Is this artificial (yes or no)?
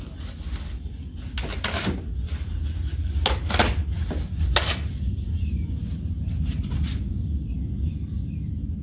no